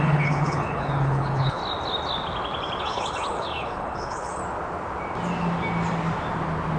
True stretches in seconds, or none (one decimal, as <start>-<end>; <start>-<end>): 1.6-2.8; 4.4-6.8